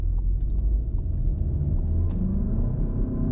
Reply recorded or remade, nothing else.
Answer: recorded